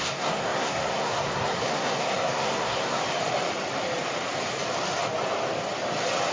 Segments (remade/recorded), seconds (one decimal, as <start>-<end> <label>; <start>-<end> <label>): 0.0-3.0 remade; 3.0-6.3 recorded